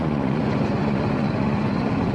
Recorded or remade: remade